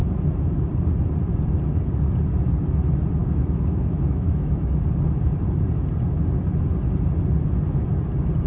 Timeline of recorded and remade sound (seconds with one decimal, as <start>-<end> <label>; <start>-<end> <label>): 0.0-0.7 remade; 0.7-3.2 recorded; 3.2-4.8 remade; 4.8-8.5 recorded